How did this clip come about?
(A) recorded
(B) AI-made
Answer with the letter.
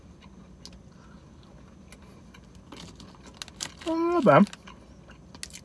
A